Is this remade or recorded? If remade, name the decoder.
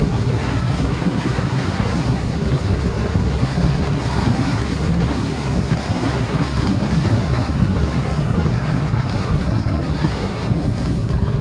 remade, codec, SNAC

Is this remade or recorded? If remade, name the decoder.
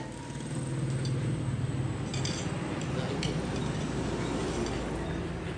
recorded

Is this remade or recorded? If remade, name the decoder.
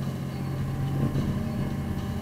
recorded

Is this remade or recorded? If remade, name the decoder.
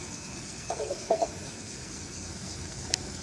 remade, codec, SNAC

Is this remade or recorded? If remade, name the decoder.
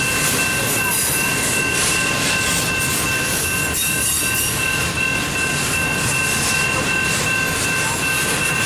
recorded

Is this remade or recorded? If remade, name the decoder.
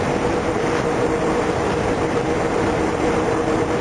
remade, vocoder, BigVGAN v2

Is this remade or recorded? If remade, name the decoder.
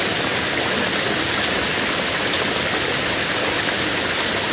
recorded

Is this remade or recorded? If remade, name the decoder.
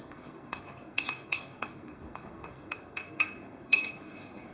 remade, codec, SNAC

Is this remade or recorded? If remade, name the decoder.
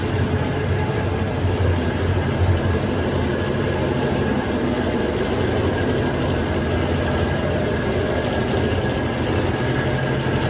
recorded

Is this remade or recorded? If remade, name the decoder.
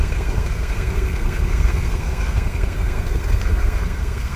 remade, codec, SNAC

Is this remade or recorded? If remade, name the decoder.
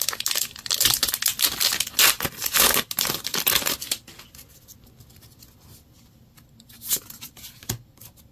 recorded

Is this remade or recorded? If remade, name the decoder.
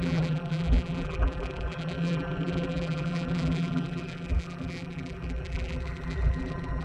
remade, vocoder, BigVGAN v2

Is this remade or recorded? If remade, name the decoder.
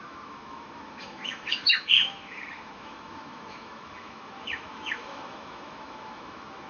remade, autoencoder, DAC-VAE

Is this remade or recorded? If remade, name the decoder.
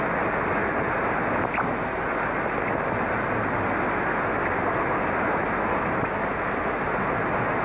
recorded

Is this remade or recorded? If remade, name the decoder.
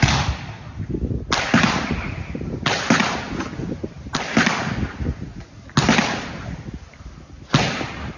recorded